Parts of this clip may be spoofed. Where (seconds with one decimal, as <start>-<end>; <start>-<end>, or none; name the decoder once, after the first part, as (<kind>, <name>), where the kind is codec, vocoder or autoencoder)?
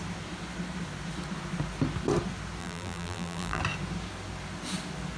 2.6-3.6 (vocoder, BigVGAN v2)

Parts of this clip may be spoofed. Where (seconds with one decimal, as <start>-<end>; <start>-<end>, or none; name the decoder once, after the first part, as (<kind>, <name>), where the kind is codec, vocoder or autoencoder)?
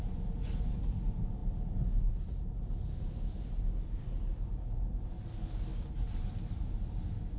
none